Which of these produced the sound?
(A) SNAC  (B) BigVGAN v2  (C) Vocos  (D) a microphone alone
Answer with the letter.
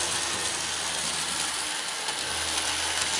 D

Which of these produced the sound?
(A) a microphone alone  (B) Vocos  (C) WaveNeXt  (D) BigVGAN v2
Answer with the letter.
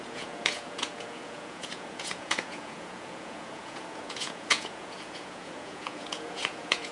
B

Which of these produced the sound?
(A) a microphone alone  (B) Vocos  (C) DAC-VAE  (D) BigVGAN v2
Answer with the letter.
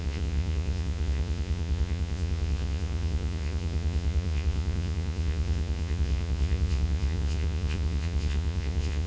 B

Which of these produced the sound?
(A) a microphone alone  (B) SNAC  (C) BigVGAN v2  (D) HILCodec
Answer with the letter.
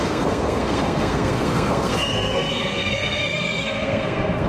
B